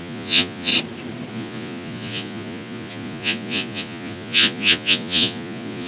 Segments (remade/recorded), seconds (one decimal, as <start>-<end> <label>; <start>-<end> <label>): 0.0-0.7 remade; 0.7-1.3 recorded; 1.3-5.9 remade